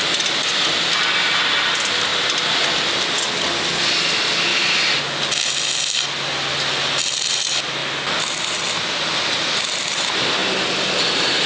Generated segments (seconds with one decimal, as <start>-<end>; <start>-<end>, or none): 4.5-5.0